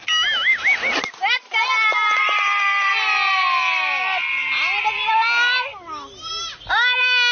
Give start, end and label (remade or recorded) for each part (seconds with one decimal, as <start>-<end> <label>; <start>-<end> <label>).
0.0-7.3 recorded